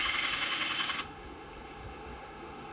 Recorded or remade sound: remade